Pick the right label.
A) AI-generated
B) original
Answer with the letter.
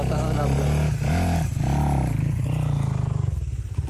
B